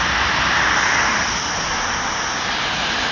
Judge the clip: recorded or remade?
recorded